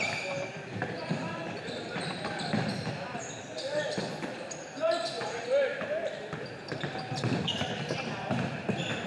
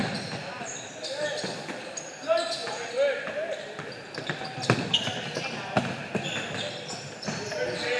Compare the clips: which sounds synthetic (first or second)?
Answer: first